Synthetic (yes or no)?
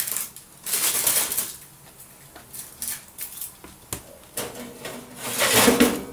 no